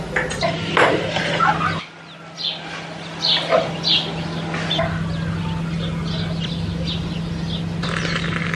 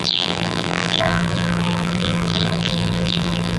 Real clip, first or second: first